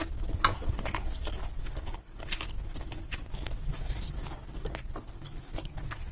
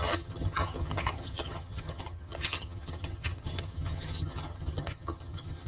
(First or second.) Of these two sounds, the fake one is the second